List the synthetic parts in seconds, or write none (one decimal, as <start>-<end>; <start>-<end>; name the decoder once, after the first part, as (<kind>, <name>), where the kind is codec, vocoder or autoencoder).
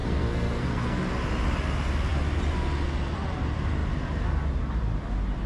0.0-1.0 (codec, SNAC)